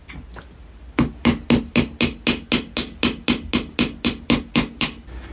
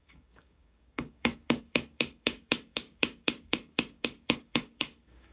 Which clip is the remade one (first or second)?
second